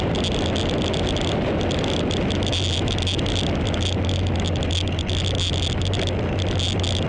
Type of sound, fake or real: real